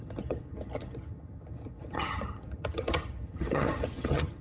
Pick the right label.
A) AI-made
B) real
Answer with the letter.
A